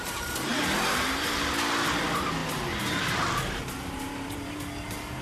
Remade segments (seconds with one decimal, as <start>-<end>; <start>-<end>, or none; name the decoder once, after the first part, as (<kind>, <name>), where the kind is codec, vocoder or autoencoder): 0.5-1.5 (vocoder, BigVGAN v2); 2.4-3.0; 3.8-4.6